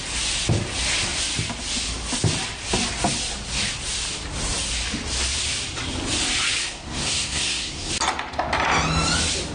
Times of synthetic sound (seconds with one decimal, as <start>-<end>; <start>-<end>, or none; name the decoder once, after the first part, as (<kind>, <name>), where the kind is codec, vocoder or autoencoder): 6.6-7.9 (codec, SNAC)